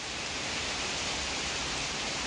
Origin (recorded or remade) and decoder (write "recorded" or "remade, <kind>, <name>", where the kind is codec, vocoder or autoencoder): remade, vocoder, BigVGAN v2